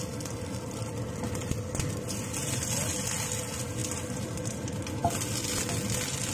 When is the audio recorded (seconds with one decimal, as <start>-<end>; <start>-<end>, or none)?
0.0-6.3